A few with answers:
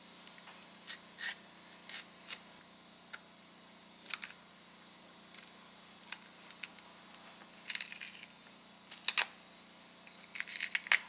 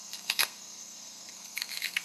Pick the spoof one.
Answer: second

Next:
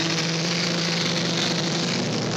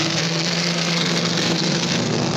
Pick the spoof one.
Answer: second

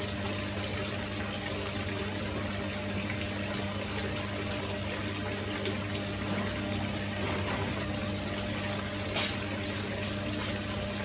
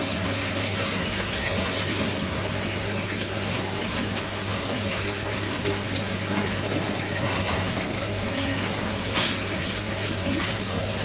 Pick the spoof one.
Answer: second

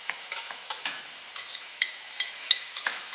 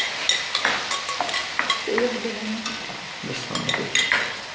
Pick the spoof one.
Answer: first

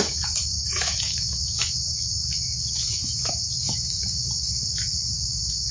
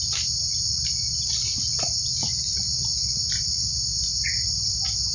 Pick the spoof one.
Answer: first